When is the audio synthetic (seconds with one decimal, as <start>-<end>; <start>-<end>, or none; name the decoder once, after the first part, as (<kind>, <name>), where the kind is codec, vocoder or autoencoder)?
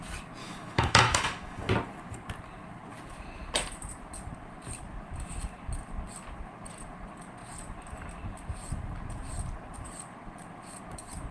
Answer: 0.4-1.7 (autoencoder, DAC-VAE)